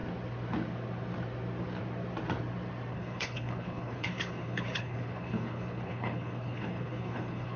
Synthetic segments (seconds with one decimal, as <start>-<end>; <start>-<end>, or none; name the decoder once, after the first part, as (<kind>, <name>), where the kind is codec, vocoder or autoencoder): 2.9-7.6 (codec, HILCodec)